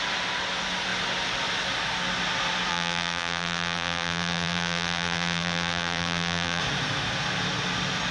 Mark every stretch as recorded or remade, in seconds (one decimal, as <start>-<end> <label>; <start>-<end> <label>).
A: 0.0-2.7 recorded; 2.7-6.6 remade; 6.6-8.1 recorded